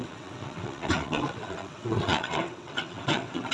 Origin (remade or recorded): remade